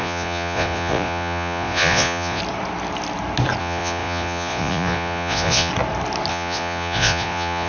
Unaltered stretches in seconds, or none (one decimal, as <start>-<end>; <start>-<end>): 2.4-3.6; 5.7-6.3